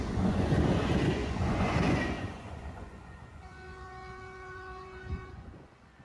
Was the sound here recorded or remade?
remade